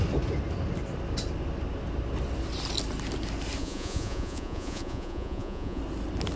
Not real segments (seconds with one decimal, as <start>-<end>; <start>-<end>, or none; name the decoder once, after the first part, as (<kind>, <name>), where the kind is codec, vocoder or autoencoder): 3.6-5.8 (vocoder, Vocos)